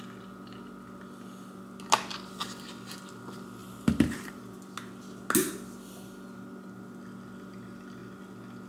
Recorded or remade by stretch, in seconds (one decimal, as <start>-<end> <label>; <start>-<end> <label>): 0.0-3.6 recorded; 3.6-4.4 remade; 4.4-8.7 recorded